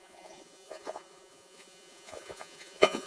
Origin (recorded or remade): remade